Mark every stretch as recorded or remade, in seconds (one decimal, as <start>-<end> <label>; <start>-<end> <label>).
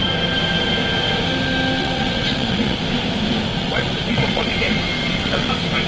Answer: 0.0-1.8 recorded; 1.8-2.8 remade; 2.8-3.5 recorded; 3.5-4.5 remade; 4.5-5.0 recorded; 5.0-5.5 remade; 5.5-5.9 recorded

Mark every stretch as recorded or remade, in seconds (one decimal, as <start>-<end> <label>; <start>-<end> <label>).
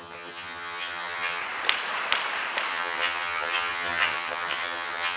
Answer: 0.0-1.4 remade; 1.4-2.7 recorded; 2.7-5.2 remade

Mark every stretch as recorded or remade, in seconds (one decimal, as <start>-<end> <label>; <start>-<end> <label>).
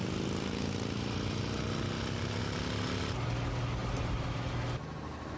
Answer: 0.0-3.8 recorded; 3.8-4.5 remade; 4.5-5.4 recorded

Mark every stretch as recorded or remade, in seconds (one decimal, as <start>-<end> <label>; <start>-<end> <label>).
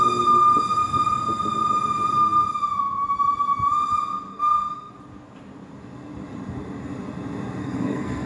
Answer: 0.0-4.3 recorded; 4.3-4.9 remade; 4.9-7.6 recorded; 7.6-8.3 remade